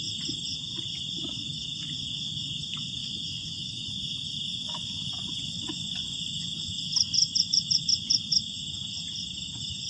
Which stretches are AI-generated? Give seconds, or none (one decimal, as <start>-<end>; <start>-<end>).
3.0-3.9; 4.5-8.6